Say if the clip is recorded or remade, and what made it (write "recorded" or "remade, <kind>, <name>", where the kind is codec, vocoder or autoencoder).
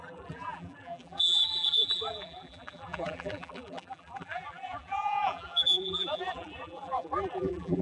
remade, vocoder, BigVGAN v2